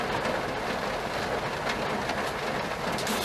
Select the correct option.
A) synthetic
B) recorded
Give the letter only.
B